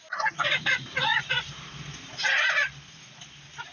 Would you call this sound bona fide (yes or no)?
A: yes